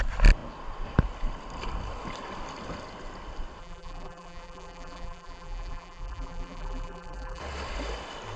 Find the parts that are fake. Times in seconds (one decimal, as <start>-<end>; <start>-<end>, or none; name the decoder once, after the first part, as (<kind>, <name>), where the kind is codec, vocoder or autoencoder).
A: 3.6-7.4 (vocoder, BigVGAN v2)